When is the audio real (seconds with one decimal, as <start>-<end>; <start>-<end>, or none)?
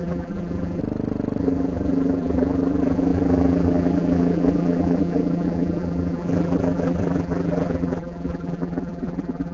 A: 0.8-1.4